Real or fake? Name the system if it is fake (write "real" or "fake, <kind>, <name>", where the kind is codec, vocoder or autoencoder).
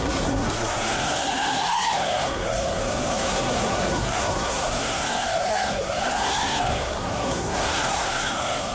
fake, codec, SNAC